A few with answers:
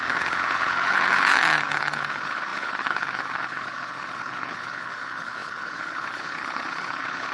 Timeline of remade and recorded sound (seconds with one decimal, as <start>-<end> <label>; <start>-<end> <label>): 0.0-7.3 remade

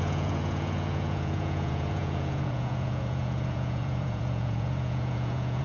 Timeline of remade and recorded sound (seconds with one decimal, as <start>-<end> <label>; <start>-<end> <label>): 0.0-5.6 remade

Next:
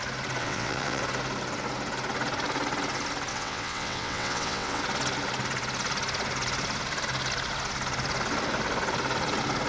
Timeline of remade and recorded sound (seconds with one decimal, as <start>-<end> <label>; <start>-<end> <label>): 0.0-0.4 recorded; 0.4-1.0 remade; 1.0-3.3 recorded; 3.3-4.8 remade; 4.8-9.7 recorded

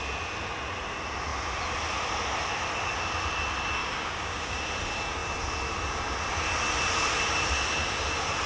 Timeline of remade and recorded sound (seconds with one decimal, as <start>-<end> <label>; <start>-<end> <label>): 0.0-3.8 recorded; 3.8-4.6 remade; 4.6-8.5 recorded

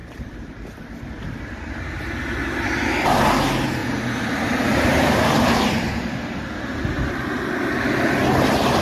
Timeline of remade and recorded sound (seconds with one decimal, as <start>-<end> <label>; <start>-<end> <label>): 0.0-2.0 remade; 2.0-3.8 recorded; 3.8-6.4 remade; 6.4-8.8 recorded

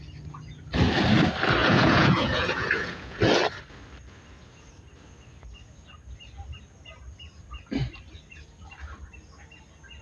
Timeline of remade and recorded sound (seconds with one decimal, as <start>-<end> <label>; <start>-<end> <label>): 0.0-1.6 recorded; 1.6-3.2 remade; 3.2-10.0 recorded